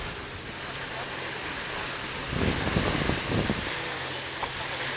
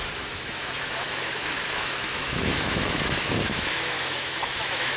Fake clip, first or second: second